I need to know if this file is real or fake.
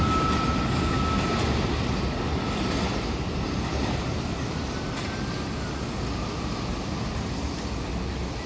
real